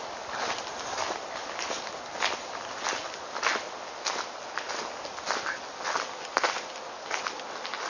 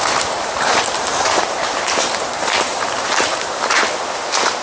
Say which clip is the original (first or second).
first